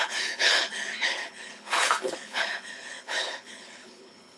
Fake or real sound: fake